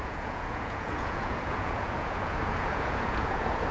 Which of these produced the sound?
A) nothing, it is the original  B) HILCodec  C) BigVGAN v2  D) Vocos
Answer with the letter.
D